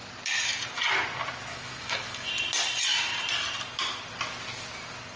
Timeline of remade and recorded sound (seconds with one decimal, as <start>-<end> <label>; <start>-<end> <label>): 0.0-1.5 recorded; 1.5-2.3 remade; 2.3-5.2 recorded

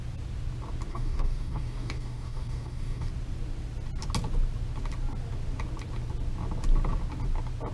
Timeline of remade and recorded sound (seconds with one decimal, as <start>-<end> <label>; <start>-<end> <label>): 0.0-0.9 recorded; 0.9-3.1 remade; 3.1-7.7 recorded

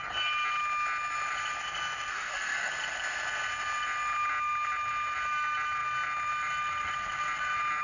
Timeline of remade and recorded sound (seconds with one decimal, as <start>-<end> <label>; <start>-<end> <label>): 0.0-2.1 recorded; 2.1-2.7 remade; 2.7-7.8 recorded

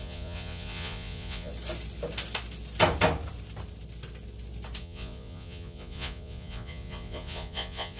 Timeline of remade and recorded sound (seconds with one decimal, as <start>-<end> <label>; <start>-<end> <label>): 0.0-1.5 remade; 1.5-4.8 recorded; 4.8-8.0 remade

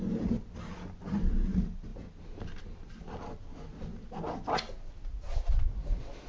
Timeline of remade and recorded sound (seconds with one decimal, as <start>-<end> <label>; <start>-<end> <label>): 0.0-6.3 recorded

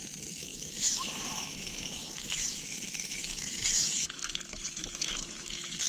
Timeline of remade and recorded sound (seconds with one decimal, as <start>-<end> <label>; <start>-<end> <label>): 0.0-5.9 remade

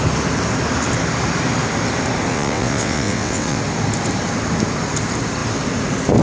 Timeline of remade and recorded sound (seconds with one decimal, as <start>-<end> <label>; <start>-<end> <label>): 0.0-2.3 recorded; 2.3-3.6 remade; 3.6-6.2 recorded

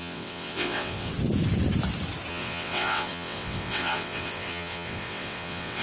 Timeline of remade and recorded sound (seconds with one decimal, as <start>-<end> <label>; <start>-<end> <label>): 0.0-1.1 remade; 1.1-2.3 recorded; 2.3-5.8 remade